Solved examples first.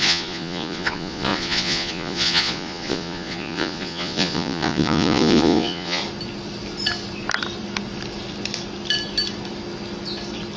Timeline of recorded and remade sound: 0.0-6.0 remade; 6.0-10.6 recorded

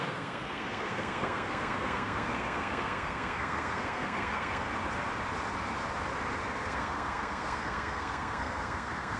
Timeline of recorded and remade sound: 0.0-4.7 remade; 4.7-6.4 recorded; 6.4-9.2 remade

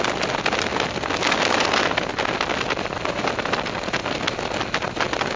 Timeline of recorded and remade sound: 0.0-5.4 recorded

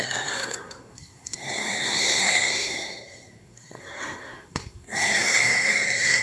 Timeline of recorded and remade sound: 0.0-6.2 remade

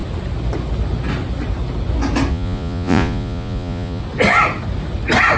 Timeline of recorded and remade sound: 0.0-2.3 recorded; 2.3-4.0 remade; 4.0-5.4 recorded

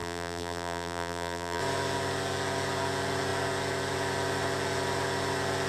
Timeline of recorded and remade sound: 0.0-1.6 remade; 1.6-5.7 recorded

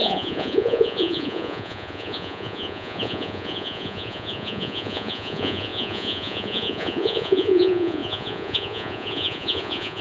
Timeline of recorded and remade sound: 0.0-10.0 remade